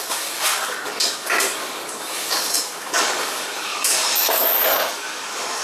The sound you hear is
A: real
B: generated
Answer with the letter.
B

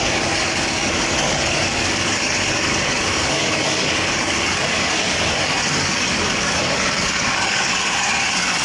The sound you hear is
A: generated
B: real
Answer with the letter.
A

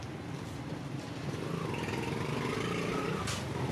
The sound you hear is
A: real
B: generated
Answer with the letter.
A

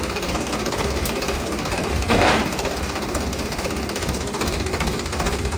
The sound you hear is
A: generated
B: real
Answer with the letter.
A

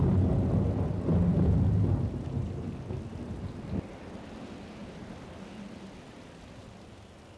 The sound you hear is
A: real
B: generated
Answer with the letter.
A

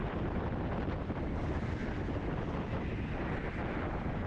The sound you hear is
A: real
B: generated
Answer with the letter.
A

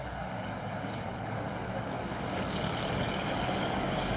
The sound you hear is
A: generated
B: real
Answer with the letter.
A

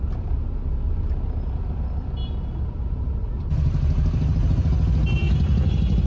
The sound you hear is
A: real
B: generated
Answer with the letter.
A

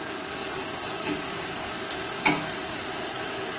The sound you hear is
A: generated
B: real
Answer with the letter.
A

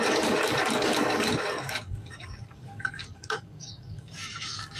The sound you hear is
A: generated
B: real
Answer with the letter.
A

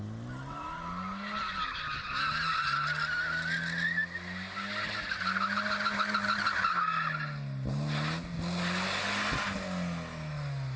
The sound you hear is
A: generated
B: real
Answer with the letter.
B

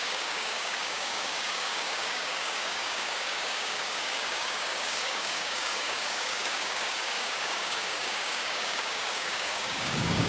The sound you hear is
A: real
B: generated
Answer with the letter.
B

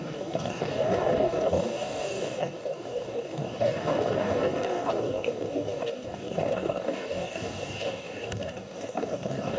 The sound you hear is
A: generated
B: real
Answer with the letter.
A